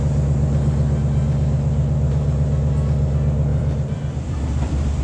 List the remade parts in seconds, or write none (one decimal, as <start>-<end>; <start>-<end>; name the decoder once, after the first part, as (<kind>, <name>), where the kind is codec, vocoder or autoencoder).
3.5-5.0 (vocoder, BigVGAN v2)